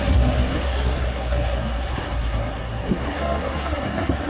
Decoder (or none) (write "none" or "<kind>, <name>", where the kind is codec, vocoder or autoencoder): codec, SNAC